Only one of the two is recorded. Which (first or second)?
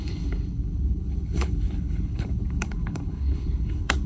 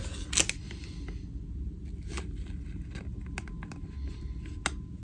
second